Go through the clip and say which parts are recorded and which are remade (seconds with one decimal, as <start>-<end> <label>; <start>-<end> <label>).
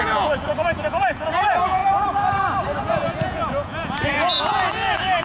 0.0-1.8 remade; 1.8-2.8 recorded; 2.8-5.2 remade